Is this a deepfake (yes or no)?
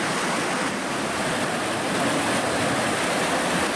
no